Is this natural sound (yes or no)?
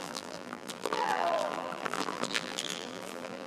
no